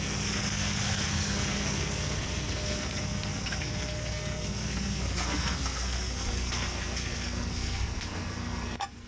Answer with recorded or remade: remade